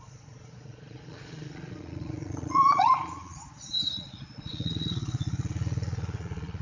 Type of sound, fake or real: fake